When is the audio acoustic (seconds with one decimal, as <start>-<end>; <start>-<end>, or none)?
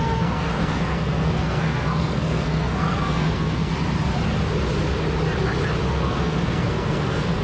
3.7-5.9